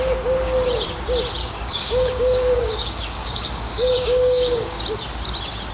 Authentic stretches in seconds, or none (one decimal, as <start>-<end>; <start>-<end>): 0.0-1.4; 4.8-5.7